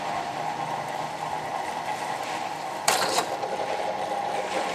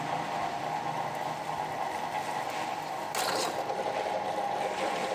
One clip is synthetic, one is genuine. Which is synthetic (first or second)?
first